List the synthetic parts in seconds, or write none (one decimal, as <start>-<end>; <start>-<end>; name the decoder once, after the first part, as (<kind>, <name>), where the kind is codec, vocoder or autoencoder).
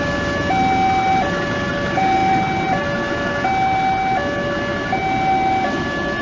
none